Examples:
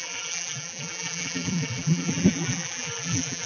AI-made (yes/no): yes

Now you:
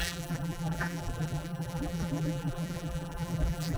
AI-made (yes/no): yes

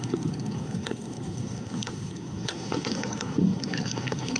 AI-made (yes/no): yes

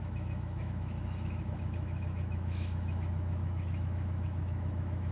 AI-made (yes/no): yes